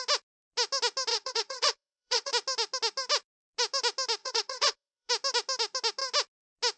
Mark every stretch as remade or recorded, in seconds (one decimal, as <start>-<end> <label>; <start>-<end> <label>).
0.0-1.1 recorded; 1.1-2.3 remade; 2.3-4.2 recorded; 4.2-5.1 remade; 5.1-6.8 recorded